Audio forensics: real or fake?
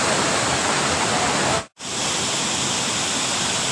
real